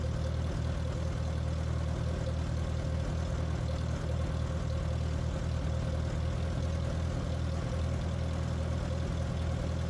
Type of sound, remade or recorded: recorded